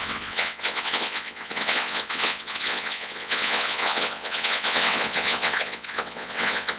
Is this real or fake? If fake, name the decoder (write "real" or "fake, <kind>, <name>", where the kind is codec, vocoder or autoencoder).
fake, vocoder, WaveNeXt